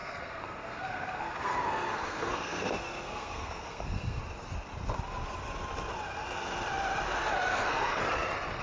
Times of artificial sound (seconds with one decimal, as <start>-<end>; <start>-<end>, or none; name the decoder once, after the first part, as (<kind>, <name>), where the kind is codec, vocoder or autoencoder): 0.0-4.2 (codec, SNAC); 7.5-8.0